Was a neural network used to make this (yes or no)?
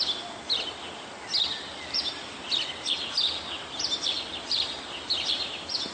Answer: no